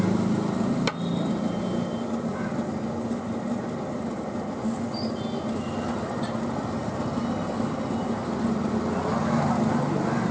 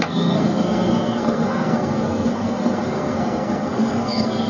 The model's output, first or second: second